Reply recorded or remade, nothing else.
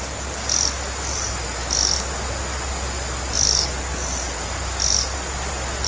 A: recorded